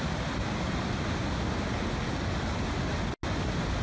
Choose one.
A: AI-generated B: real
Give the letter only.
B